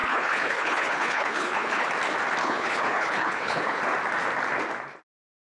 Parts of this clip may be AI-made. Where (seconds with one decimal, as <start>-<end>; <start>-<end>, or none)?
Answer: 0.0-1.9; 2.4-3.8